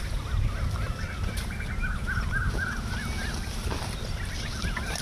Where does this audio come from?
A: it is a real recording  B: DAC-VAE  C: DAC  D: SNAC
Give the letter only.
A